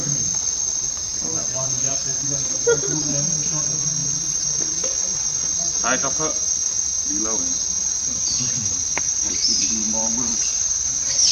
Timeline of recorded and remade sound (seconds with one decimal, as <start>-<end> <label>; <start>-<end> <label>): 0.0-11.3 recorded